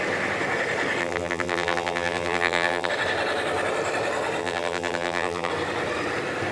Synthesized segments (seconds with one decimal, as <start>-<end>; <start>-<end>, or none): 1.0-2.9; 4.4-5.5

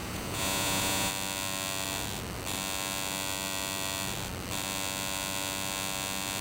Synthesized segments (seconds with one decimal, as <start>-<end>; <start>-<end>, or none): 0.0-1.1

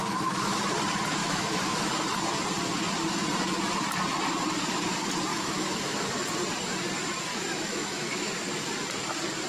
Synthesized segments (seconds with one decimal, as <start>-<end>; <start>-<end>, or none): 0.0-0.6; 1.2-1.9; 5.3-6.1; 7.3-8.3

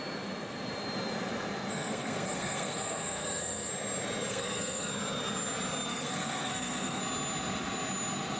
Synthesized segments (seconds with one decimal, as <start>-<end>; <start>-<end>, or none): 1.7-3.7; 4.3-4.9; 5.9-7.0

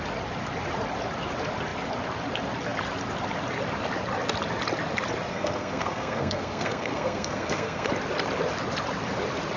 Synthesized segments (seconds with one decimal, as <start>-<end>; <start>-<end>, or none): 5.3-7.9

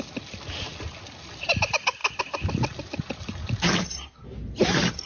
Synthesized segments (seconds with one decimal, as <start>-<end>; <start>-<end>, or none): none